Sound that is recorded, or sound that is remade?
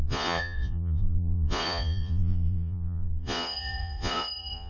remade